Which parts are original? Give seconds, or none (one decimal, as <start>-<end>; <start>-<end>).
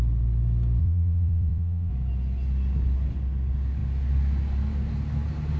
0.0-0.8; 1.9-5.6